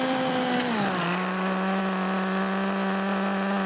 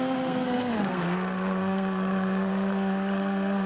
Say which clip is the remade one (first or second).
second